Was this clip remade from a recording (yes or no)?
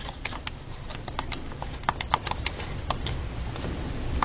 no